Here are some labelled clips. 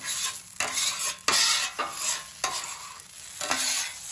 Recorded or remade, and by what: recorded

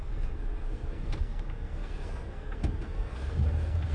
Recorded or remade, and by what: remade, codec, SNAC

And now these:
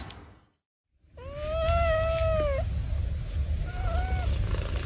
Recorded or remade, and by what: recorded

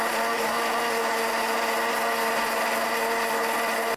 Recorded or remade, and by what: recorded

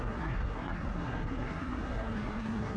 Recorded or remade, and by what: remade, codec, SNAC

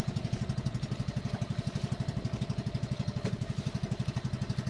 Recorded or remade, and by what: recorded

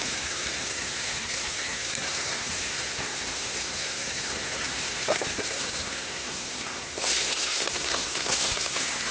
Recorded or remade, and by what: remade, codec, SNAC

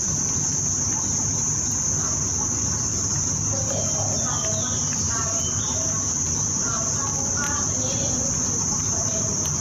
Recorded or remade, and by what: recorded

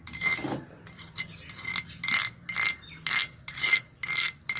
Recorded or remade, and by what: recorded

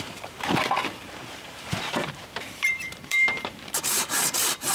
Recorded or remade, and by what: remade, vocoder, BigVGAN v2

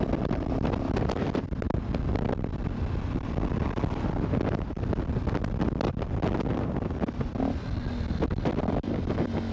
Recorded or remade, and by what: recorded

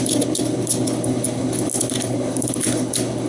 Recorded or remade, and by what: remade, codec, HILCodec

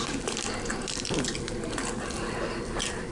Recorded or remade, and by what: recorded